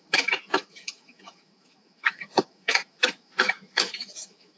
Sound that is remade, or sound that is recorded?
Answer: remade